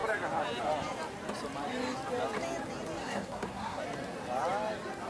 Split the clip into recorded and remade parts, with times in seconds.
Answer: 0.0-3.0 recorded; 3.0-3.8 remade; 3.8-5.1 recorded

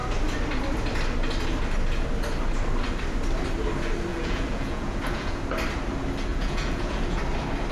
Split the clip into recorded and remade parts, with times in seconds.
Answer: 0.0-4.1 recorded; 4.1-5.4 remade; 5.4-6.3 recorded; 6.3-7.2 remade; 7.2-7.7 recorded

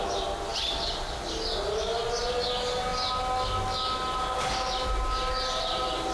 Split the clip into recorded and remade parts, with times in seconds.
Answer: 0.0-6.1 recorded

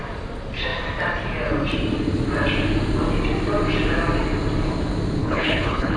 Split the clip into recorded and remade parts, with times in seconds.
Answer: 0.0-5.2 recorded; 5.2-6.0 remade

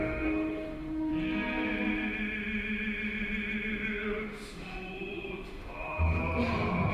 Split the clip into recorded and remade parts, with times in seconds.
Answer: 0.0-1.1 remade; 1.1-4.2 recorded; 4.2-6.2 remade; 6.2-6.9 recorded

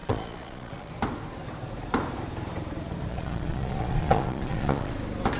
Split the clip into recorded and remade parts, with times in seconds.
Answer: 0.0-0.9 remade; 0.9-3.1 recorded; 3.1-4.9 remade; 4.9-5.4 recorded